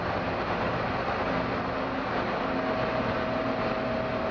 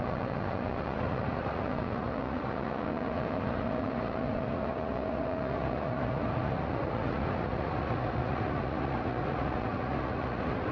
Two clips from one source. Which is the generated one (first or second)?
second